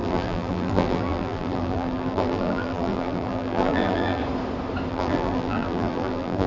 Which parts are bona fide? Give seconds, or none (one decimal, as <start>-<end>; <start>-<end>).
4.2-4.9